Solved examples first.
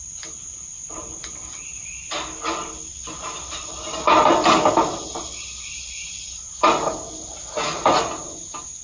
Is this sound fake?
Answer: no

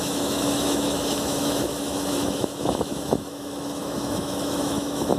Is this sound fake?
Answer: yes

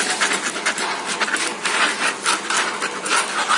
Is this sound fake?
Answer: no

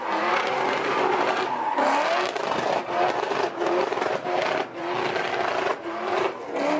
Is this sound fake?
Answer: no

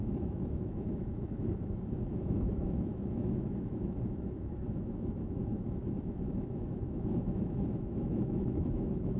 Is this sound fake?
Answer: yes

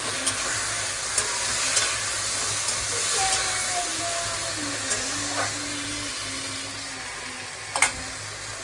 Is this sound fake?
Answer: no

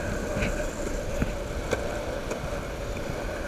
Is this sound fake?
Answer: no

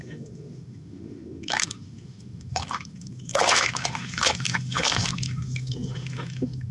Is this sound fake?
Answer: yes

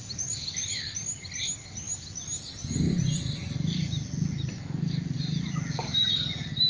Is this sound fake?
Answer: no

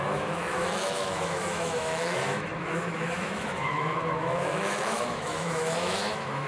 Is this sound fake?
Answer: yes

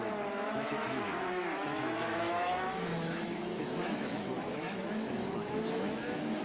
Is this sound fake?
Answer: yes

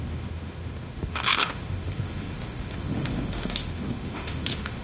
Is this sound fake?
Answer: yes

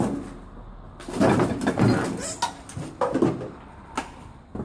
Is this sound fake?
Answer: no